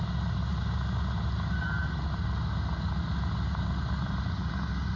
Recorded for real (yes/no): yes